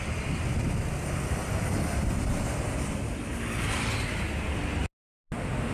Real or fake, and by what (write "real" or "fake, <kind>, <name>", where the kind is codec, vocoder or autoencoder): real